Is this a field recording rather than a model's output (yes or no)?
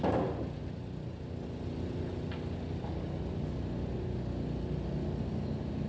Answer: yes